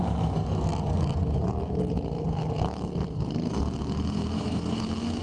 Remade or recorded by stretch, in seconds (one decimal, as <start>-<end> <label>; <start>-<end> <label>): 0.0-1.2 remade; 1.2-3.8 recorded; 3.8-5.2 remade